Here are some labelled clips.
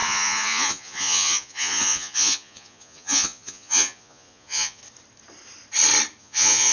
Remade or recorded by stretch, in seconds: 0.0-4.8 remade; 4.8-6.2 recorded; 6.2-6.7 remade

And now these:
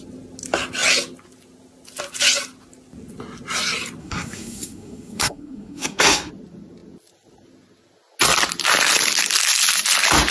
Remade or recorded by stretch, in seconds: 0.0-4.0 recorded; 4.0-6.3 remade; 6.3-10.3 recorded

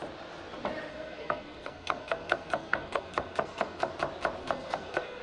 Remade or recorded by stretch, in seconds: 0.0-0.9 recorded; 0.9-3.9 remade; 3.9-4.4 recorded; 4.4-5.2 remade

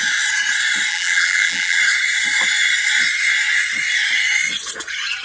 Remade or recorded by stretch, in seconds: 0.0-0.9 recorded; 0.9-1.8 remade; 1.8-5.2 recorded

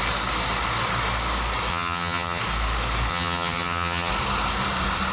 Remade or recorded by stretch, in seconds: 0.0-1.7 recorded; 1.7-2.4 remade; 2.4-3.1 recorded; 3.1-4.1 remade; 4.1-5.1 recorded